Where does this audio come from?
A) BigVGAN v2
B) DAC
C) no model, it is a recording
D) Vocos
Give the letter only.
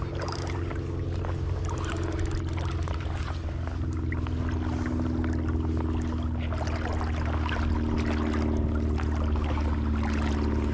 C